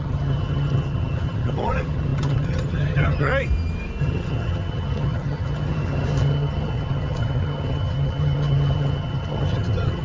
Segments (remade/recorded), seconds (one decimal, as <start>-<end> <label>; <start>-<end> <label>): 0.0-3.3 remade; 3.3-4.0 recorded; 4.0-10.0 remade